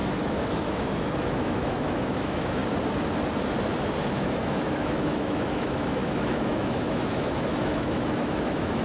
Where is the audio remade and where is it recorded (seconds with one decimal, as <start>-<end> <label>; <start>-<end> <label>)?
0.0-2.6 remade; 2.6-4.1 recorded; 4.1-8.8 remade